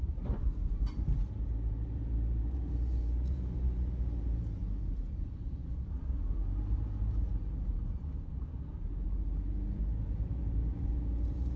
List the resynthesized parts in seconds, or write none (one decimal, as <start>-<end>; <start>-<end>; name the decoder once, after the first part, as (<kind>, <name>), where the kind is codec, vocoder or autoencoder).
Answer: 0.0-11.6 (vocoder, BigVGAN v2)